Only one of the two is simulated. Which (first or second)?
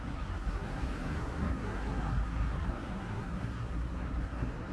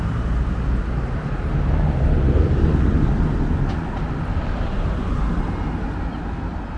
first